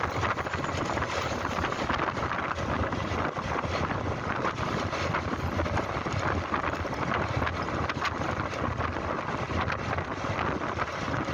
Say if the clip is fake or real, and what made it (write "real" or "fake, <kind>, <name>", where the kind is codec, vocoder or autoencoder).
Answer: real